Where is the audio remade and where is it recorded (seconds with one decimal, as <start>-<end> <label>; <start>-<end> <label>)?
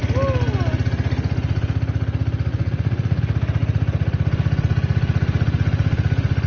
0.0-2.5 recorded; 2.5-3.2 remade; 3.2-6.5 recorded